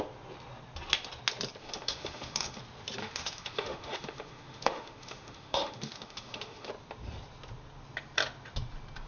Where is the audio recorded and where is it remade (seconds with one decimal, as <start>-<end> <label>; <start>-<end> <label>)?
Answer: 0.0-1.6 recorded; 1.6-2.6 remade; 2.6-3.0 recorded; 3.0-6.7 remade; 6.7-9.1 recorded